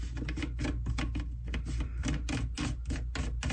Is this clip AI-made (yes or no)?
no